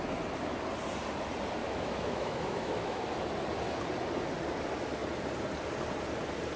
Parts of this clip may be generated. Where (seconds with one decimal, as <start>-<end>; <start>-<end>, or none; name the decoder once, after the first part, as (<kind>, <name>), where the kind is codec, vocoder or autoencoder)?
1.6-3.0 (autoencoder, DAC-VAE)